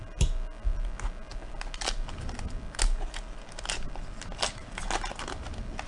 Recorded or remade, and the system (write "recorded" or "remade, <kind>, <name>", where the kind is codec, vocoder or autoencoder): recorded